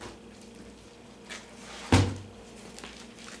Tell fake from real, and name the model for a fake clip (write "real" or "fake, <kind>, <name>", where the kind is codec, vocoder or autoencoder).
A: real